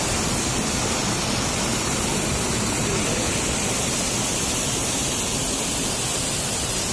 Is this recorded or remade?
recorded